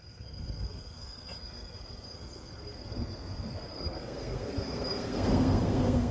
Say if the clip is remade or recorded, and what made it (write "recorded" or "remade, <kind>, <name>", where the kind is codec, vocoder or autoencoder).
remade, codec, SNAC